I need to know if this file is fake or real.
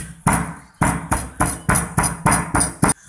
real